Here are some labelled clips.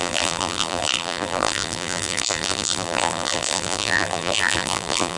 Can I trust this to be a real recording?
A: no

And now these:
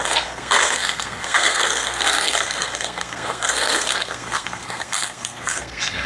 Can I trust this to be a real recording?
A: no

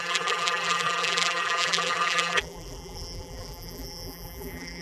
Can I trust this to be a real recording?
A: no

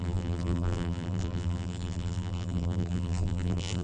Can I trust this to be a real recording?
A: no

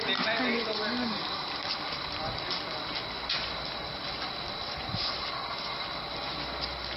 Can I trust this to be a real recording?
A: yes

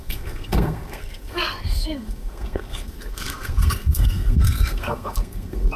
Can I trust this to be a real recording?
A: no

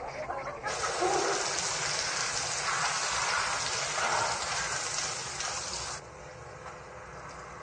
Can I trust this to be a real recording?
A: yes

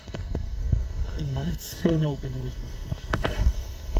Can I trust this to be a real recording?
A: no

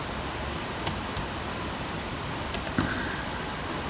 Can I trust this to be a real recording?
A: yes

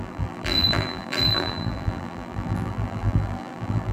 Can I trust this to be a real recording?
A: no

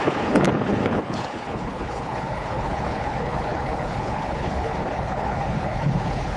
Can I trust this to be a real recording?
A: no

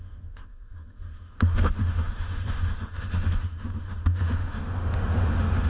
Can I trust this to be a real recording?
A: no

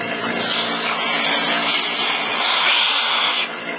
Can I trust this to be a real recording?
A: yes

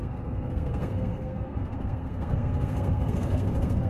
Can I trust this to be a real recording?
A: no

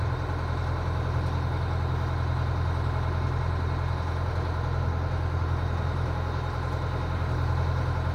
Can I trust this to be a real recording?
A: yes